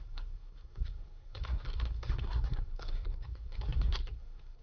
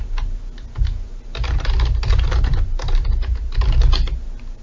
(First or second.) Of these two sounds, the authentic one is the second